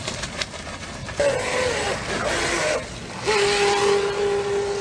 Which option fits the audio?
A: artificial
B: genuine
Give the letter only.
B